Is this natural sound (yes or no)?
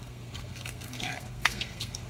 no